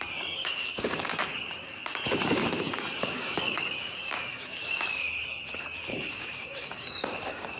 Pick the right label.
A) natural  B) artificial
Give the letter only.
B